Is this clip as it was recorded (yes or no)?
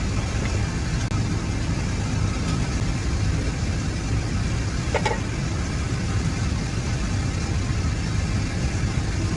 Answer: yes